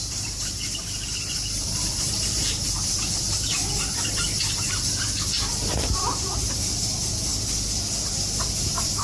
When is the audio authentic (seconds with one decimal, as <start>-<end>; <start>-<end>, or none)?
3.5-4.4; 7.3-8.0